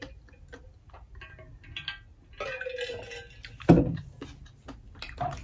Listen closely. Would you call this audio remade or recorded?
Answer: recorded